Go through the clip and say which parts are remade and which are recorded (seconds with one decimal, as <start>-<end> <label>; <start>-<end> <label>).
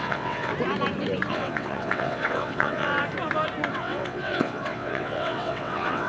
0.0-0.5 remade; 0.5-1.3 recorded; 1.3-2.9 remade; 2.9-3.7 recorded; 3.7-6.1 remade